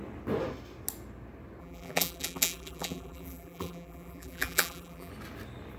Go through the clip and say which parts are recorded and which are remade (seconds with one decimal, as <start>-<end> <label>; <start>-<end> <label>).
0.0-1.6 recorded; 1.6-5.1 remade; 5.1-5.8 recorded